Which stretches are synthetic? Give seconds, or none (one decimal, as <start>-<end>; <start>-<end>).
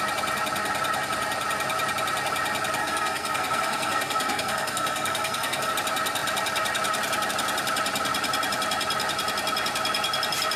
2.8-5.7